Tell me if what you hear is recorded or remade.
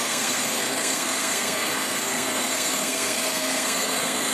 remade